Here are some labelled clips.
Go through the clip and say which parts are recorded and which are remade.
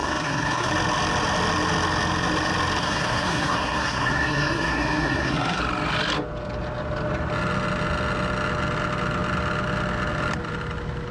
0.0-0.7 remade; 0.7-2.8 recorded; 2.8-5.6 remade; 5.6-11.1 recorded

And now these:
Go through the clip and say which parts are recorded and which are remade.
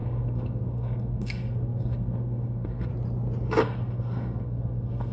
0.0-2.9 remade; 2.9-3.6 recorded; 3.6-5.1 remade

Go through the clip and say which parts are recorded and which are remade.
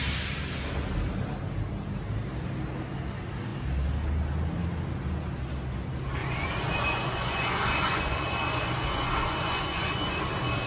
0.0-6.2 recorded; 6.2-10.2 remade; 10.2-10.7 recorded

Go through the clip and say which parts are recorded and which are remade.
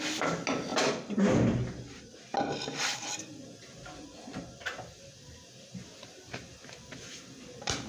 0.0-7.9 recorded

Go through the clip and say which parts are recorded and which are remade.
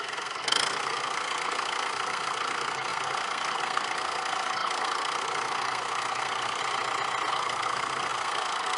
0.0-6.6 remade; 6.6-7.3 recorded; 7.3-8.8 remade